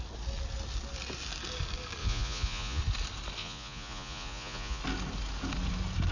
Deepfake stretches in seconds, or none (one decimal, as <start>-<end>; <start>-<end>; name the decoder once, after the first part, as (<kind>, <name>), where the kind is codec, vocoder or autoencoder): 2.0-2.8 (vocoder, Vocos); 3.4-4.8